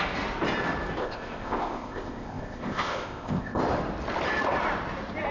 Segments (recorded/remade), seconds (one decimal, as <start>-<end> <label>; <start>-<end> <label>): 0.0-1.0 recorded; 1.0-3.6 remade; 3.6-5.3 recorded